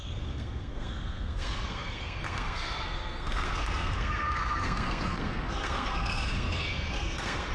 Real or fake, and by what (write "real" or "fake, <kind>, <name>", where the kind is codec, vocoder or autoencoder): fake, codec, SNAC